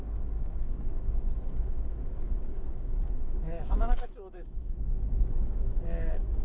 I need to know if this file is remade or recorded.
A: remade